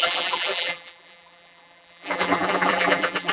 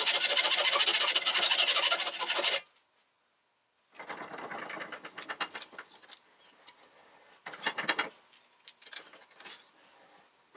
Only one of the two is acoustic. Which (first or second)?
second